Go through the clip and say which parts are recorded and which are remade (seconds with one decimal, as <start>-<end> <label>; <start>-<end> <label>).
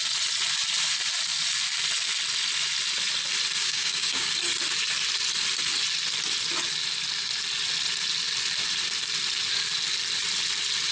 0.0-3.6 recorded; 3.6-4.3 remade; 4.3-10.9 recorded